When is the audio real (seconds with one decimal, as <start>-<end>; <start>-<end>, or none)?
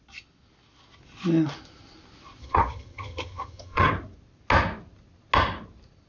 0.0-2.4; 3.9-6.1